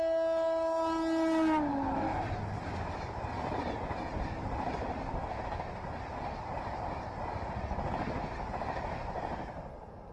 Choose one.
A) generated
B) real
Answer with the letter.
B